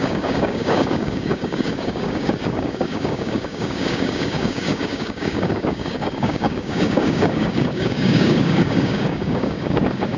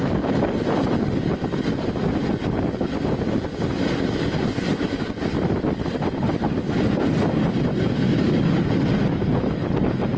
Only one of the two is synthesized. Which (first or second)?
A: first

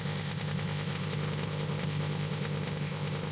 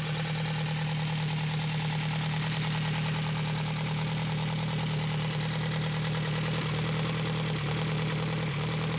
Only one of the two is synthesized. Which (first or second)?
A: first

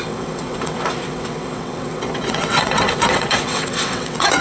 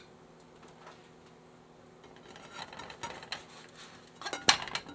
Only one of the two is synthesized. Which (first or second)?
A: first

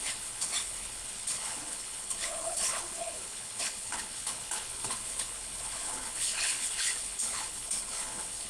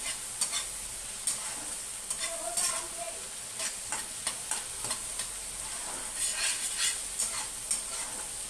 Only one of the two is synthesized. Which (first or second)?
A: first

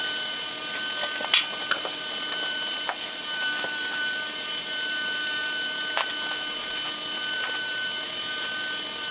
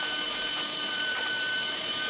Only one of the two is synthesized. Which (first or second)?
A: second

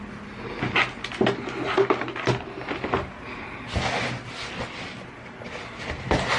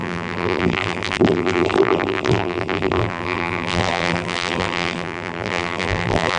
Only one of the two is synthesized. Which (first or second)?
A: second